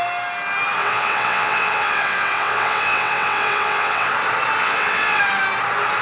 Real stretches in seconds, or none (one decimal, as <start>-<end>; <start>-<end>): 0.0-0.8; 4.1-4.6; 5.2-6.0